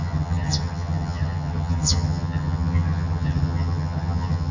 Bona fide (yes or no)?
no